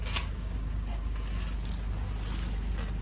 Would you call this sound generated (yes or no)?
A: no